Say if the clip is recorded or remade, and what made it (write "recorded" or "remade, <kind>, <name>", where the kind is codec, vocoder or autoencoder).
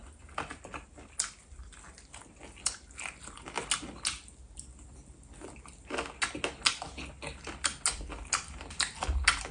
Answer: recorded